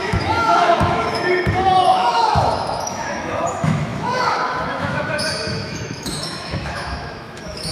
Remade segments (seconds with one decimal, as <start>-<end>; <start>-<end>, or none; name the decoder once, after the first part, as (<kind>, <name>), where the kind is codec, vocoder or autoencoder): 0.0-7.7 (autoencoder, DAC-VAE)